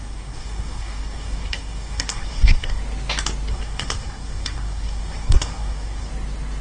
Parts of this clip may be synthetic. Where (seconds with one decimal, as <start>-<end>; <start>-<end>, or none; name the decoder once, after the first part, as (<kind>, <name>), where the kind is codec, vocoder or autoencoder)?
0.0-2.8 (codec, SNAC); 3.5-6.1